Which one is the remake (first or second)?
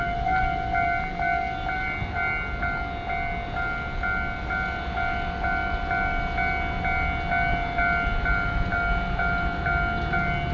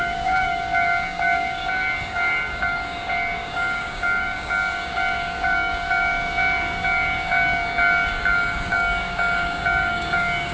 second